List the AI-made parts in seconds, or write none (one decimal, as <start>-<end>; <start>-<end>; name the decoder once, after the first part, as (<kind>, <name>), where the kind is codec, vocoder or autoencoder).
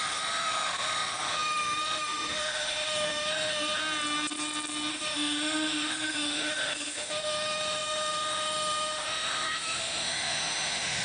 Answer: 0.0-3.8 (autoencoder, DAC-VAE); 4.9-11.0